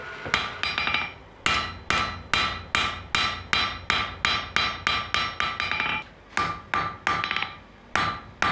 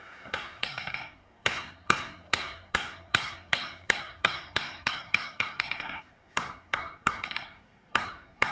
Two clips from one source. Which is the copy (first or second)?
second